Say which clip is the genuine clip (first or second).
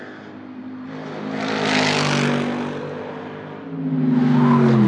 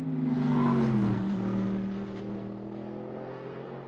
first